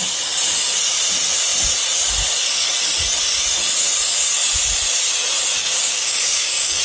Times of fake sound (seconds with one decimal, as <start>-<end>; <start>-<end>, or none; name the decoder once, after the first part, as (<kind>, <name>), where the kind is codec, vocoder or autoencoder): 5.6-6.8 (codec, DAC)